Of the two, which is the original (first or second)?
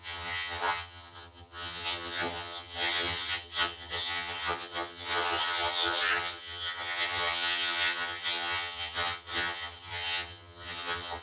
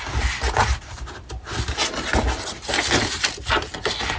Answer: second